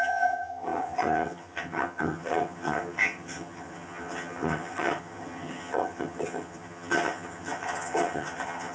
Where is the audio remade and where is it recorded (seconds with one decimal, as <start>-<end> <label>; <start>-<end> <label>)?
0.0-8.7 remade